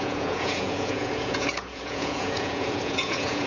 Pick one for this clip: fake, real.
fake